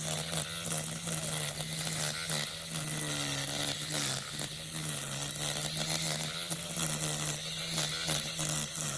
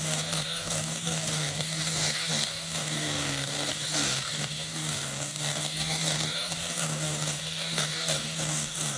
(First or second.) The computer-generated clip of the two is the second